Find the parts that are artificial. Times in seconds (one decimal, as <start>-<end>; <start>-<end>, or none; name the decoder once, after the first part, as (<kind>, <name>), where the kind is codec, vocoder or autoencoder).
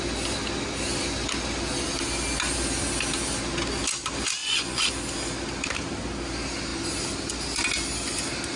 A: 4.4-4.9 (vocoder, Vocos)